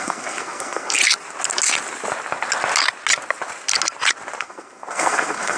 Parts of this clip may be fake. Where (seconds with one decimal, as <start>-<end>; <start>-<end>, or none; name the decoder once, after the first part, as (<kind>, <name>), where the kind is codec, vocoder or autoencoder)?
0.0-1.0 (codec, SNAC); 4.4-5.6